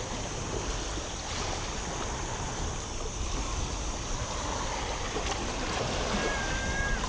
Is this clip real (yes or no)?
yes